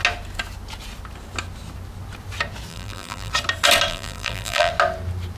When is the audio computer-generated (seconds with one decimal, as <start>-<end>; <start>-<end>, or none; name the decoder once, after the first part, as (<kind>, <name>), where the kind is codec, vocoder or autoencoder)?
2.7-3.3 (vocoder, BigVGAN v2); 3.9-4.7